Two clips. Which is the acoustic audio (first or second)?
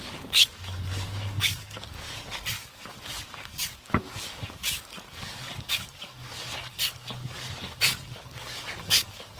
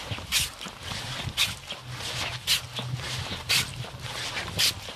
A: second